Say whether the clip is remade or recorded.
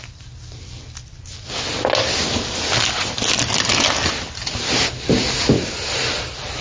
recorded